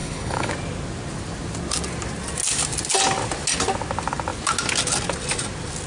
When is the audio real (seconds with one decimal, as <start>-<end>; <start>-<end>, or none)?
0.5-5.9